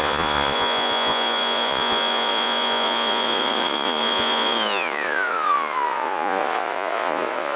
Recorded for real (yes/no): no